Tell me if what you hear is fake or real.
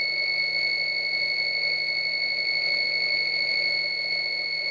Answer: real